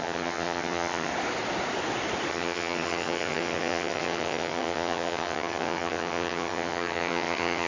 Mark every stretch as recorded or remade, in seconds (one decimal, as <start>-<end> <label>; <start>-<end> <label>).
0.0-1.1 remade; 1.1-2.3 recorded; 2.3-7.7 remade